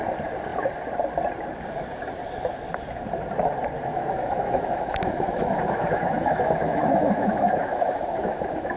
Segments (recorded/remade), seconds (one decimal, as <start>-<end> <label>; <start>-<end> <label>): 0.0-3.9 recorded; 3.9-8.8 remade